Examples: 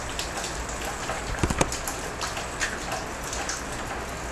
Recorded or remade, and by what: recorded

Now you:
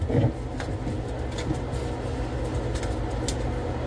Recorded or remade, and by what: recorded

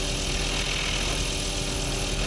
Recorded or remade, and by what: recorded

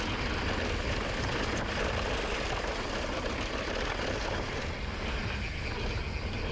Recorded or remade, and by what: recorded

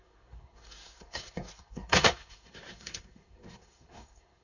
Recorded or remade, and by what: remade, codec, SNAC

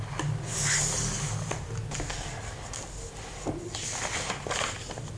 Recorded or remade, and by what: recorded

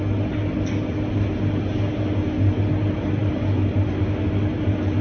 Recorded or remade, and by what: recorded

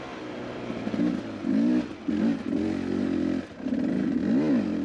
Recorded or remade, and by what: recorded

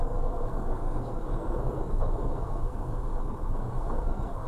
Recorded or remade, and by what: remade, codec, SNAC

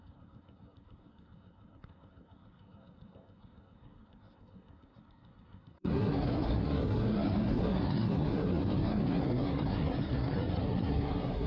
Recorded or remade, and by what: remade, codec, SNAC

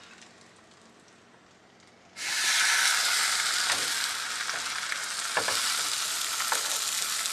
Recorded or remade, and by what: recorded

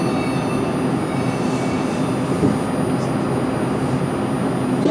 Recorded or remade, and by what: recorded